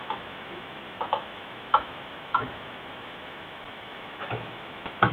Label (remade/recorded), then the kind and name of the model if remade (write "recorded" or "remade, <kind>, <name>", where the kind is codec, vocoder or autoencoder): remade, autoencoder, DAC-VAE